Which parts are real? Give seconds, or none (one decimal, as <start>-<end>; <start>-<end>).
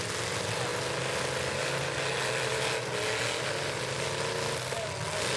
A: 0.0-5.4